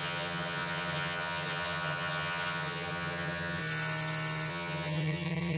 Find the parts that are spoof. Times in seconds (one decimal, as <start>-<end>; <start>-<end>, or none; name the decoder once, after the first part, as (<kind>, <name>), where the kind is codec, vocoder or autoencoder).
0.0-3.6 (vocoder, HiFi-GAN); 4.5-5.6